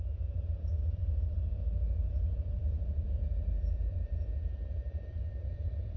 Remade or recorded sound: remade